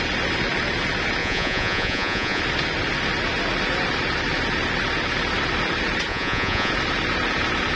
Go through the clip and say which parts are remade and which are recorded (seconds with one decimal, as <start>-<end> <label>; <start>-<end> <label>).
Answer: 0.0-1.2 recorded; 1.2-2.4 remade; 2.4-6.1 recorded; 6.1-6.7 remade; 6.7-7.8 recorded